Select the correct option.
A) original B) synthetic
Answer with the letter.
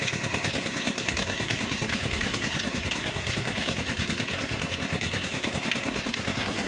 B